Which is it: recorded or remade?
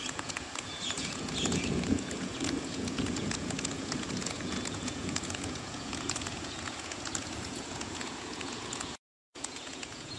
remade